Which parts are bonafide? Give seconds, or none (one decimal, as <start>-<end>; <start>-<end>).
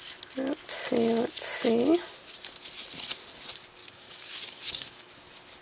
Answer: 0.0-3.8; 5.1-5.6